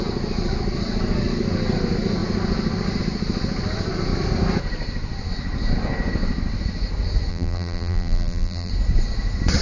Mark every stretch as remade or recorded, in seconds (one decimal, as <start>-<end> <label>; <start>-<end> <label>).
0.0-7.3 recorded; 7.3-8.7 remade; 8.7-9.6 recorded